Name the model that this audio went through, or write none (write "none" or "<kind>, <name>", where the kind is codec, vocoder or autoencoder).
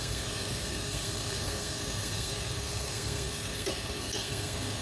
codec, SNAC